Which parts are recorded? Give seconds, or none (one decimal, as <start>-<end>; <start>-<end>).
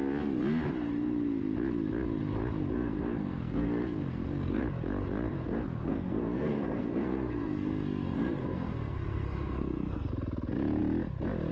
0.0-2.6; 4.6-5.3; 10.1-11.5